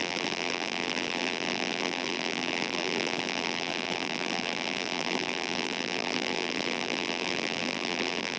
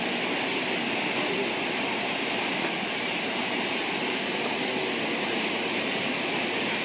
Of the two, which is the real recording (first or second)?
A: second